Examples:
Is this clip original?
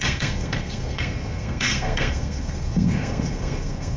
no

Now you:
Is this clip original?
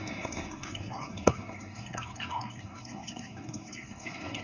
no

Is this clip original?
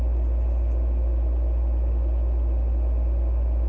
yes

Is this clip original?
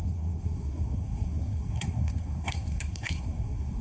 no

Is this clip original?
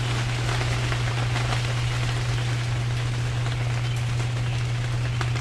yes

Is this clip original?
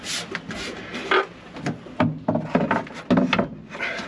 yes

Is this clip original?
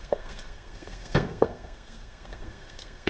no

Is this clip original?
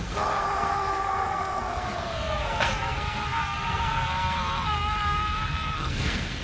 no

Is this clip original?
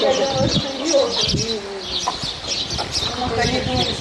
yes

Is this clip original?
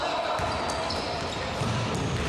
yes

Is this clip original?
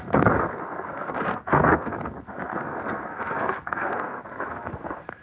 no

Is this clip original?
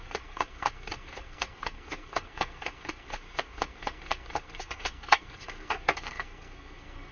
no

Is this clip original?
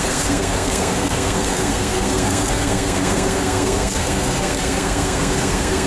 no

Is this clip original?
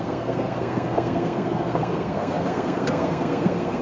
no